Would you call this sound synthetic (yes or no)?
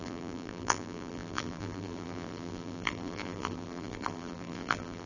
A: yes